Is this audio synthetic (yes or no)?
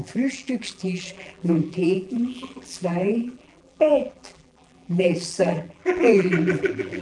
yes